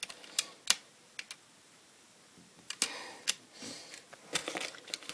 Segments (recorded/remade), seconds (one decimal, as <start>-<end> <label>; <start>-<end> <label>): 0.0-5.1 recorded